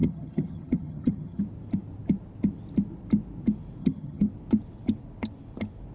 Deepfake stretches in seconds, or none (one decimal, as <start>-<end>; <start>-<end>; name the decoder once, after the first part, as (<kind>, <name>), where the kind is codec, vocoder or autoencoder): 0.0-1.4 (vocoder, HiFi-GAN); 3.8-4.3